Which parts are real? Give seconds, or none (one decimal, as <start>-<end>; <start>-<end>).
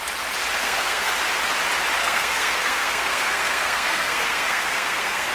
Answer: 0.0-0.6; 1.1-2.0